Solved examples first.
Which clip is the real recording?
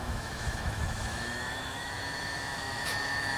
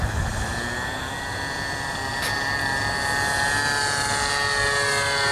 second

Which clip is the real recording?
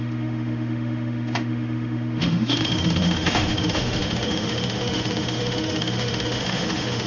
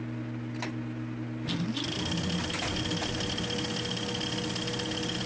second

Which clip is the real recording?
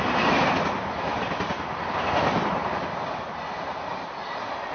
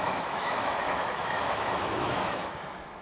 first